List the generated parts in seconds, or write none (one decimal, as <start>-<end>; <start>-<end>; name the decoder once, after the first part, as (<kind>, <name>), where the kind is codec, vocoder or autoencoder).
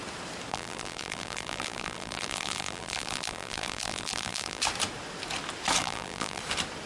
0.5-4.6 (vocoder, BigVGAN v2); 5.8-6.4